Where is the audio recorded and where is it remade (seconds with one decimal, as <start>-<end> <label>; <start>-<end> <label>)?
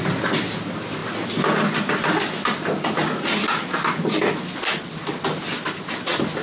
0.0-6.4 recorded